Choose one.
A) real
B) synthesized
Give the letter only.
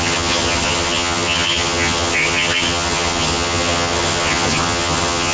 B